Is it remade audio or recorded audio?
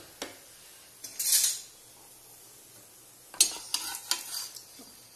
recorded